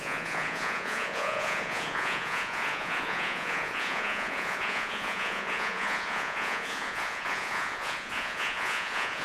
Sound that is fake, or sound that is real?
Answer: fake